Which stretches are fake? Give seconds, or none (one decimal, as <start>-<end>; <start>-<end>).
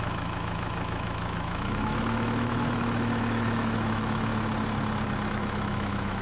0.0-4.3; 5.3-6.2